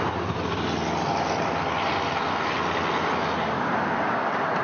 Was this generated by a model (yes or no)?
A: no